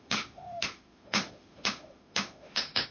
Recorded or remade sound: remade